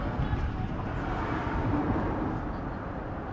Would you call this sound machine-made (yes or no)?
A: no